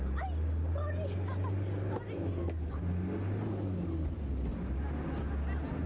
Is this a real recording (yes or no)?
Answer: yes